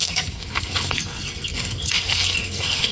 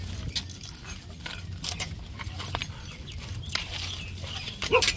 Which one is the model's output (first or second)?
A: first